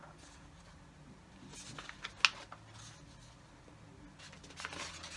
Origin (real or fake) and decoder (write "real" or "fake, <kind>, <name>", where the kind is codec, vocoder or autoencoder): real